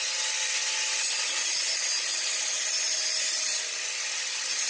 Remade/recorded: recorded